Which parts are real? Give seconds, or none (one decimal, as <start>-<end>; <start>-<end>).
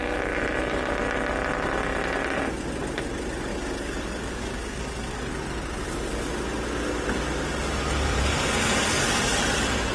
0.0-3.5; 5.3-9.9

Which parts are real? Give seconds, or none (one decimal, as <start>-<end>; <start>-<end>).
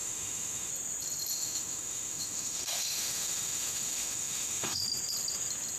0.7-1.3; 4.8-5.8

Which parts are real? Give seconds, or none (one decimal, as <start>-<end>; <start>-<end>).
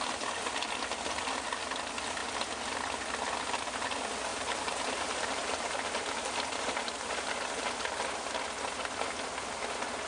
0.0-4.3; 7.4-10.1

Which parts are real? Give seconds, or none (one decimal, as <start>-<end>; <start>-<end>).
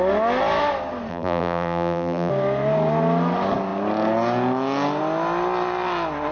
0.0-1.1; 2.3-6.3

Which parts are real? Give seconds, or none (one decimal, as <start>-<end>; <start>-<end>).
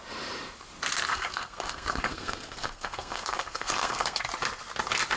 0.0-1.1; 4.2-5.2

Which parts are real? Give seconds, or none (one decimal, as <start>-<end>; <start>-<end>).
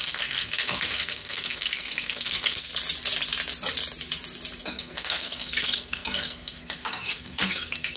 2.7-4.6